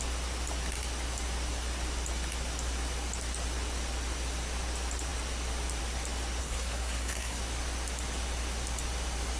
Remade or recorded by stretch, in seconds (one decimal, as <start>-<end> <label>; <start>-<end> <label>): 0.0-6.4 recorded; 6.4-7.4 remade; 7.4-9.4 recorded